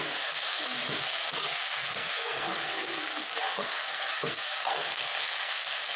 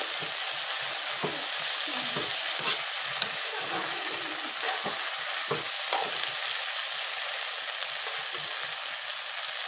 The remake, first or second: first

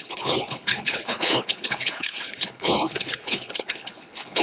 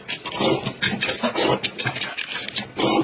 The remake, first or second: first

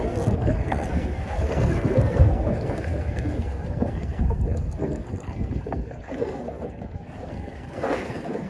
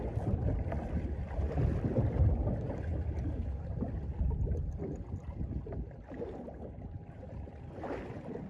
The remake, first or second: first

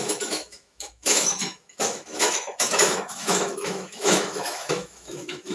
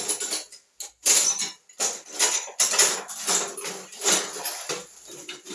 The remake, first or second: first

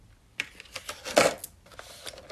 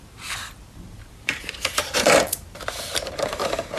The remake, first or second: second